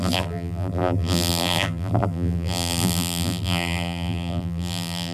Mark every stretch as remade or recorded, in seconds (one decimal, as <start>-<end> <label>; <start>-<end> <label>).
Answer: 0.0-5.1 remade